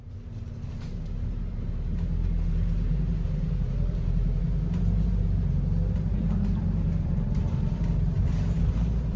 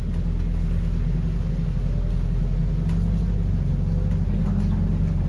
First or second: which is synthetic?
first